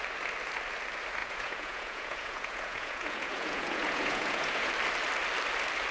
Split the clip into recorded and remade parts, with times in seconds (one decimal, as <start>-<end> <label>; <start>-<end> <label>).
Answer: 0.0-1.2 recorded; 1.2-4.7 remade; 4.7-5.9 recorded